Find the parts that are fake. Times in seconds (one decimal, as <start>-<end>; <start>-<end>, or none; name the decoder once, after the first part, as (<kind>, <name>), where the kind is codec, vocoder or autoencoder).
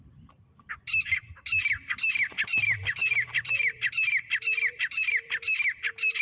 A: none